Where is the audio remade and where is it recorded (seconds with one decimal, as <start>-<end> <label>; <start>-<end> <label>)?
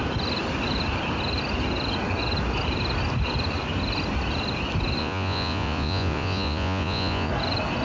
0.0-5.0 recorded; 5.0-7.3 remade; 7.3-7.8 recorded